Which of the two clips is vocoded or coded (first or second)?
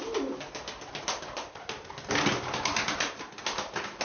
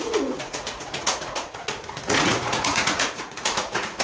second